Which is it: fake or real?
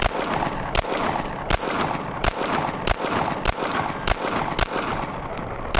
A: real